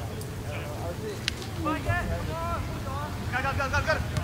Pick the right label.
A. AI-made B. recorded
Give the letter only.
B